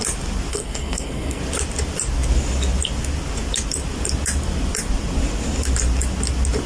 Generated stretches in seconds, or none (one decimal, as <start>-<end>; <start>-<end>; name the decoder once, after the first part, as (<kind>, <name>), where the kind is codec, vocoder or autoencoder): 0.5-1.4 (codec, SNAC)